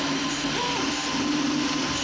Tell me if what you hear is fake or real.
real